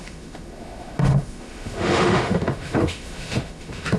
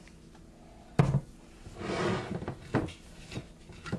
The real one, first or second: second